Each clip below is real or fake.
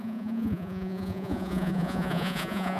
fake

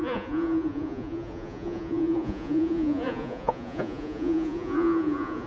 fake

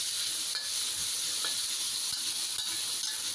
real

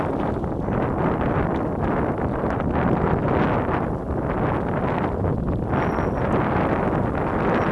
real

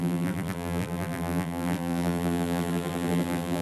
fake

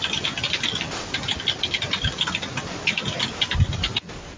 real